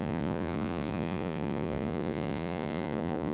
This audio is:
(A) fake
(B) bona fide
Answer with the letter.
A